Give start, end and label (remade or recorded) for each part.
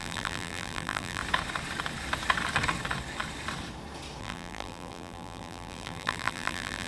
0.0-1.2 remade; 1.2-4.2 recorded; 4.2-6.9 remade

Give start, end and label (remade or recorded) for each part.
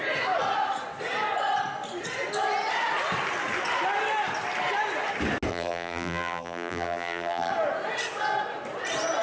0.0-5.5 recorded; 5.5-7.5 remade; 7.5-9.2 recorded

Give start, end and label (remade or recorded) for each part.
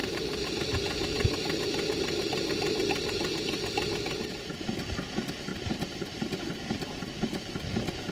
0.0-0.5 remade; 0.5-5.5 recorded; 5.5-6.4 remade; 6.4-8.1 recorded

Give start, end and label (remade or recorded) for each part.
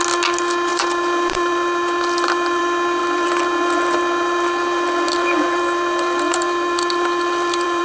0.0-0.7 recorded; 0.7-2.6 remade; 2.6-3.0 recorded; 3.0-7.8 remade